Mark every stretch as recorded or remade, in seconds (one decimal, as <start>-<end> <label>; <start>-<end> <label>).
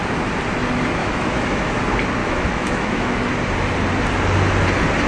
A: 0.0-1.0 recorded; 1.0-1.8 remade; 1.8-2.2 recorded; 2.2-3.3 remade; 3.3-5.1 recorded